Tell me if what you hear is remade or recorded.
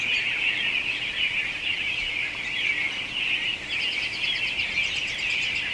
recorded